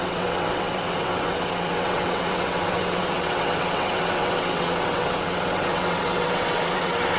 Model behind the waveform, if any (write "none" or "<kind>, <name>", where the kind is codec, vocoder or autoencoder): vocoder, WaveNeXt